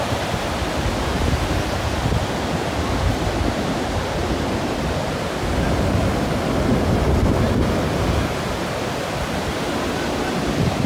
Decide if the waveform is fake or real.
real